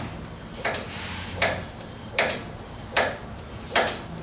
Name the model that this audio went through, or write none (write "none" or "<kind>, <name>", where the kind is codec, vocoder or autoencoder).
none